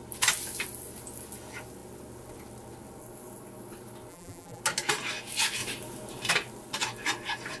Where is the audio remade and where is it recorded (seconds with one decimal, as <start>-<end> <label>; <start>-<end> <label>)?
0.0-4.1 recorded; 4.1-4.6 remade; 4.6-7.6 recorded